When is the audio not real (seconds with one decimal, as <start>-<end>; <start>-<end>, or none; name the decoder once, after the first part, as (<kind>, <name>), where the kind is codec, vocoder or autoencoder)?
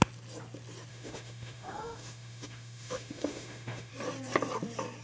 0.9-3.9 (autoencoder, DAC-VAE)